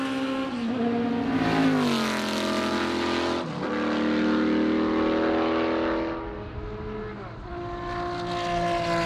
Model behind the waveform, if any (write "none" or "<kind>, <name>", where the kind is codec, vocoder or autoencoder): none